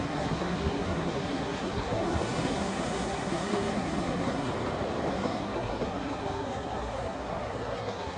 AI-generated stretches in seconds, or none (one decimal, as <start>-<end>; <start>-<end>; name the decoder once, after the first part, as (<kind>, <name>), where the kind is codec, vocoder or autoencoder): 0.0-4.5 (codec, SNAC); 5.1-8.2